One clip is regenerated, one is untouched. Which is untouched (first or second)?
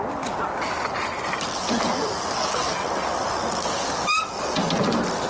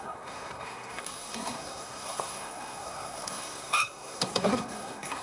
first